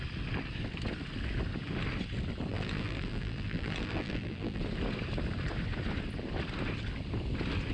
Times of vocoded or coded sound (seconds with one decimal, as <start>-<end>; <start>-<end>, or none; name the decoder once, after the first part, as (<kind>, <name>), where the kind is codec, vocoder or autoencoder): 2.5-4.6 (vocoder, BigVGAN v2)